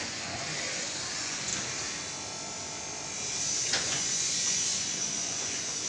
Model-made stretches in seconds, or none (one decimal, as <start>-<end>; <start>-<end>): 0.0-1.5; 3.6-5.9